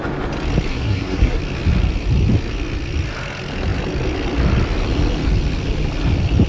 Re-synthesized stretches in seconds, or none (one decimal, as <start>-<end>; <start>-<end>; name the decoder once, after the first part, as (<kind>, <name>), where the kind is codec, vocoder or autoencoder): 0.7-1.4 (codec, SNAC)